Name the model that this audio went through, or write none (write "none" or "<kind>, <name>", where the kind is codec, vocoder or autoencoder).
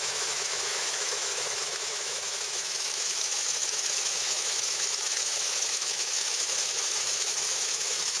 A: autoencoder, DAC-VAE